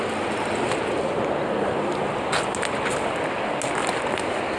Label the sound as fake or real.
real